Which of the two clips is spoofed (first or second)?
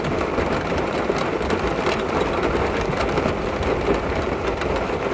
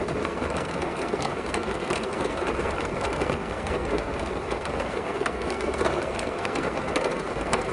second